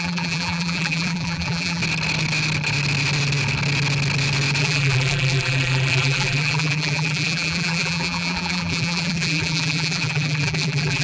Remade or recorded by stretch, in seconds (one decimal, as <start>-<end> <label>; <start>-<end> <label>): 0.0-1.8 remade; 1.8-4.6 recorded; 4.6-11.0 remade